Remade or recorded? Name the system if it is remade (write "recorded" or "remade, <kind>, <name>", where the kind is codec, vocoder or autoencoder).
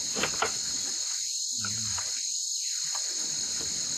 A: recorded